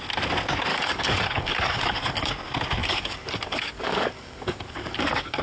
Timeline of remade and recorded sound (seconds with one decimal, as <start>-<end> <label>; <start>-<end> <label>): 0.0-0.7 recorded; 0.7-2.3 remade; 2.3-2.8 recorded; 2.8-5.4 remade